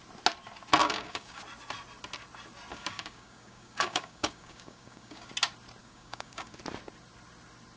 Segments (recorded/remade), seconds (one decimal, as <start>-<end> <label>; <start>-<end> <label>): 0.0-0.8 recorded; 0.8-1.4 remade; 1.4-2.7 recorded; 2.7-5.3 remade; 5.3-5.8 recorded; 5.8-6.6 remade; 6.6-7.8 recorded